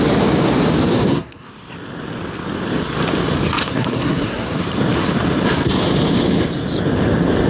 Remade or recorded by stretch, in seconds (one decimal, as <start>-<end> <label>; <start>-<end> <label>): 0.0-0.9 recorded; 0.9-1.5 remade; 1.5-3.6 recorded; 3.6-4.6 remade; 4.6-7.5 recorded